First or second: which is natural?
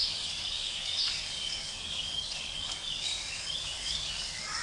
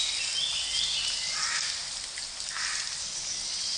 second